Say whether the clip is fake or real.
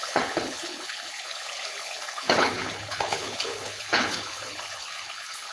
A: fake